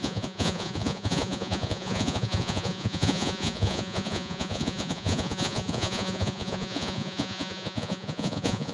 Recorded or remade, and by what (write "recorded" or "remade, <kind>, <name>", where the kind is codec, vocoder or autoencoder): remade, vocoder, Vocos